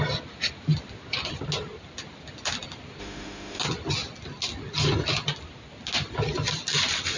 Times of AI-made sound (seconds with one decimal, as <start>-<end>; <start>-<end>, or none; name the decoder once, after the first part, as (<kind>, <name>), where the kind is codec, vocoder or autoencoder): 3.0-3.6 (autoencoder, DAC-VAE)